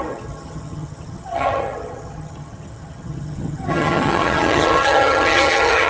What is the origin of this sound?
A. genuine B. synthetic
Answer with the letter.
B